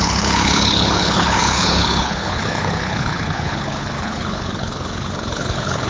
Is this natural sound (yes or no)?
no